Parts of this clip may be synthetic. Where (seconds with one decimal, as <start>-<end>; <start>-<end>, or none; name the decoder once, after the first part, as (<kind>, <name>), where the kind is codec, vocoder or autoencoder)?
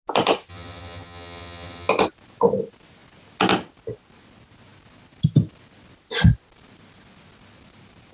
0.5-1.9 (vocoder, HiFi-GAN)